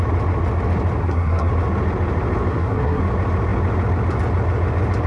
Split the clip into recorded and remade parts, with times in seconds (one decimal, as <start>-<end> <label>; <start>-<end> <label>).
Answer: 0.0-1.0 recorded; 1.0-1.5 remade; 1.5-2.5 recorded; 2.5-3.0 remade; 3.0-5.1 recorded